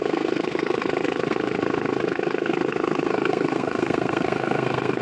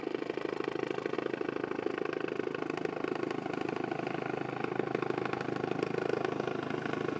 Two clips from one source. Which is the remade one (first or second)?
first